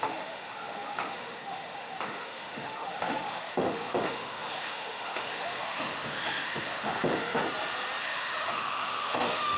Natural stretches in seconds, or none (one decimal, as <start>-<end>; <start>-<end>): 7.4-8.0